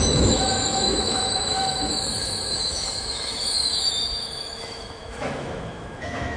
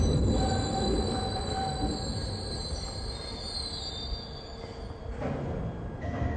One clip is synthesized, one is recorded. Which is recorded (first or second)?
second